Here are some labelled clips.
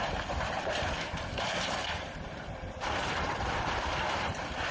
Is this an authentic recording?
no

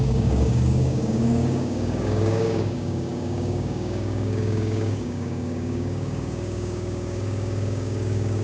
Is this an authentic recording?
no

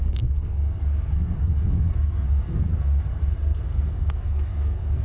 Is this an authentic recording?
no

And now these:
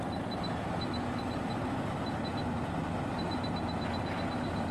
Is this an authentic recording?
yes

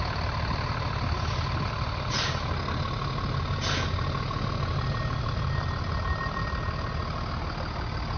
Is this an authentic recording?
yes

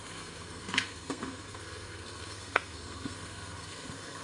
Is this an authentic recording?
no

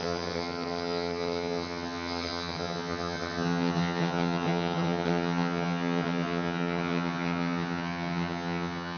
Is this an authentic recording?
no